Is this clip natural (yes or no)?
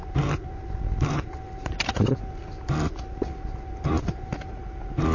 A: yes